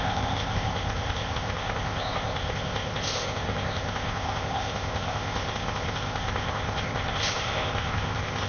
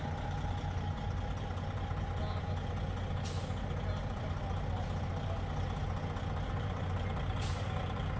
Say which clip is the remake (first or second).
first